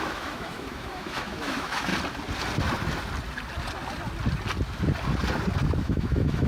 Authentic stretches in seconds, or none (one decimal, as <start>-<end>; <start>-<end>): 1.9-5.8

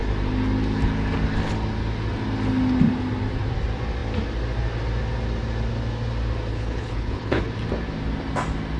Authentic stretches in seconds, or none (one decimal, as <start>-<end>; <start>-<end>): 0.0-6.5; 7.5-8.8

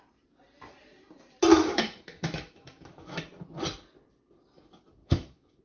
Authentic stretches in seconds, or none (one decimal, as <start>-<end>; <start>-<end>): 0.0-1.5; 3.2-5.0

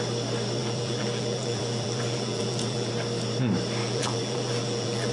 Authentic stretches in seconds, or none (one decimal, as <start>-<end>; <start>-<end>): 0.0-0.6; 2.9-3.8

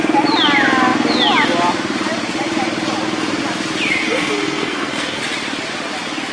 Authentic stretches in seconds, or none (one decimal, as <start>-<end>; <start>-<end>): 0.0-4.0; 5.2-6.3